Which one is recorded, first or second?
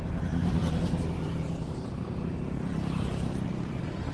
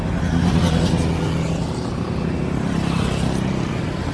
second